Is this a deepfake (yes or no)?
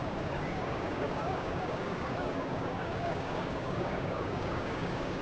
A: yes